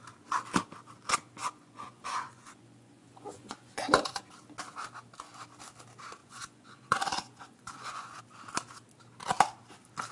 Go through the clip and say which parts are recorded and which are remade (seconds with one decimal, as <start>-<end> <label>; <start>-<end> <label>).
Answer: 0.0-1.4 recorded; 1.4-4.2 remade; 4.2-6.2 recorded; 6.2-8.2 remade; 8.2-10.1 recorded